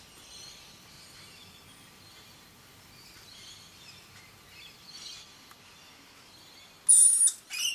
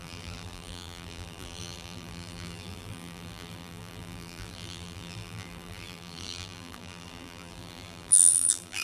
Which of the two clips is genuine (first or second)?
first